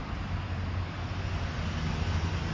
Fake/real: real